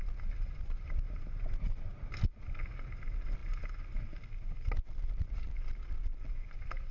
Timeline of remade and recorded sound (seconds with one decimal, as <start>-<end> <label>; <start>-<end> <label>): 0.0-6.9 recorded